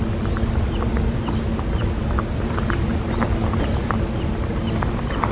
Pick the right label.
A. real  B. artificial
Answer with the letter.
A